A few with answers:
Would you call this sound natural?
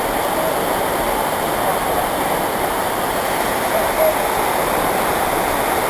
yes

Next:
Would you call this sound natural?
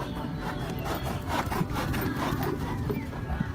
yes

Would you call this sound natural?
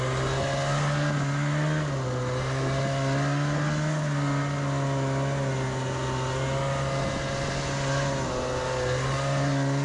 yes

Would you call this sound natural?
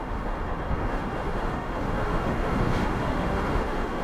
no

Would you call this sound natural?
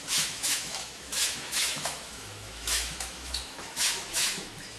no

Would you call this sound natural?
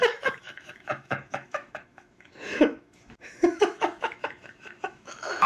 no